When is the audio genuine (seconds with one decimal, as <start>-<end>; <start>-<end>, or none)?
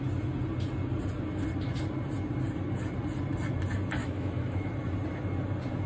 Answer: 0.0-4.0; 4.7-5.9